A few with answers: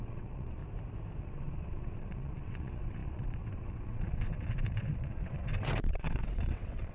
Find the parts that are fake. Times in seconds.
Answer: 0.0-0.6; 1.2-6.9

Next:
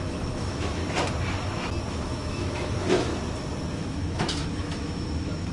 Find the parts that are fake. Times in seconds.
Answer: 0.0-0.8; 1.9-3.1; 3.7-5.5

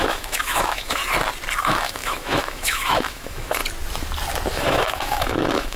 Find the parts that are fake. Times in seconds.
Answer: 0.0-1.0; 1.6-3.6; 4.5-5.8

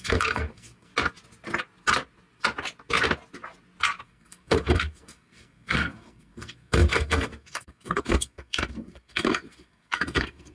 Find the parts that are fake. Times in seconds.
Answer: 0.0-0.9; 4.0-10.5

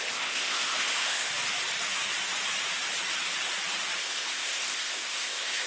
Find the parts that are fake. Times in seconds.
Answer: 0.0-1.3; 4.0-5.7

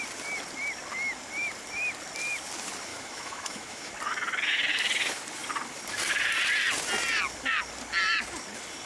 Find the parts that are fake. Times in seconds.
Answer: 2.9-3.9

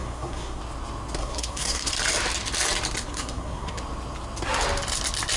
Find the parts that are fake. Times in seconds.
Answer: 0.0-0.6; 1.2-1.9; 3.0-3.8

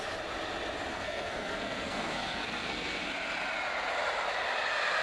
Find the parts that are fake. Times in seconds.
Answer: 0.9-3.0